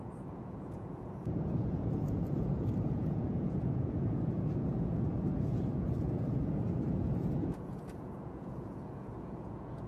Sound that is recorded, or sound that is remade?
remade